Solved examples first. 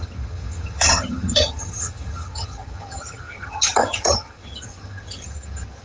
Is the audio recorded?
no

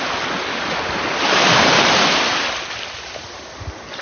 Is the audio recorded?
yes